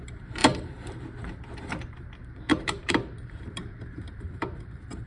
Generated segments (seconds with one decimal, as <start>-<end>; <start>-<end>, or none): 0.0-5.1